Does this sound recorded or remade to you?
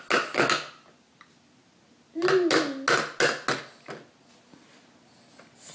recorded